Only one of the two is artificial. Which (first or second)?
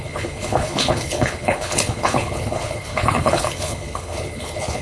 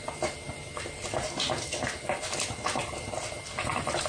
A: first